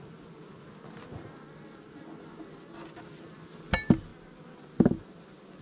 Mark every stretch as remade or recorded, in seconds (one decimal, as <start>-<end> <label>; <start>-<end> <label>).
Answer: 0.0-5.6 recorded